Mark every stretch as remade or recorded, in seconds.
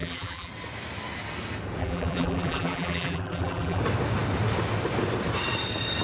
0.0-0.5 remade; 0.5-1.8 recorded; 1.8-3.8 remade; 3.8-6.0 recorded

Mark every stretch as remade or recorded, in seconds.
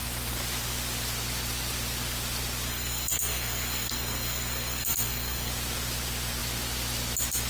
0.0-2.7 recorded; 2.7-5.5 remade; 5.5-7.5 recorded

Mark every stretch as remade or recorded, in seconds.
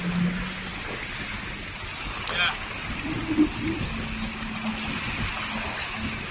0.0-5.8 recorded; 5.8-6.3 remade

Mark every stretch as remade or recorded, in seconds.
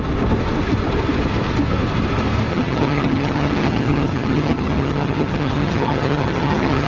0.0-2.5 recorded; 2.5-6.9 remade